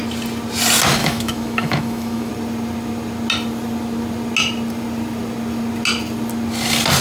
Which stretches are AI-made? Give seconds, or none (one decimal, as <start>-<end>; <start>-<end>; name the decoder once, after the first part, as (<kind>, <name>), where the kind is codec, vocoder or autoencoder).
1.0-2.3 (autoencoder, DAC-VAE)